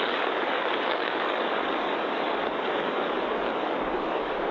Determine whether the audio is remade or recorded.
remade